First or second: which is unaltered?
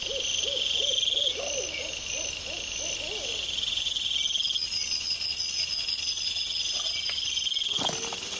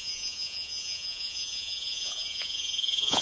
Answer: first